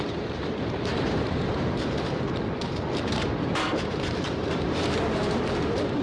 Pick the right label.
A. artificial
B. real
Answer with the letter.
A